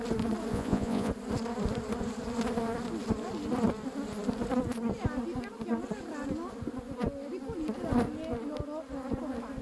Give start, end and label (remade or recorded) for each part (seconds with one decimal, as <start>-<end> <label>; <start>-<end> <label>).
0.0-0.5 recorded; 0.5-1.1 remade; 1.1-9.6 recorded